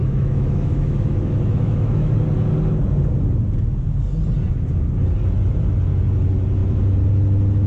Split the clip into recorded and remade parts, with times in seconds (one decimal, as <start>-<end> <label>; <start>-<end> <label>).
0.0-2.1 remade; 2.1-7.7 recorded